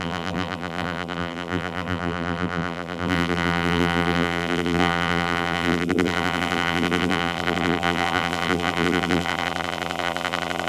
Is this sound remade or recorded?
remade